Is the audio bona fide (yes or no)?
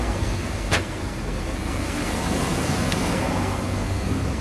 no